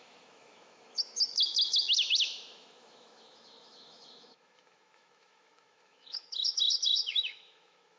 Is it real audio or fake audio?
fake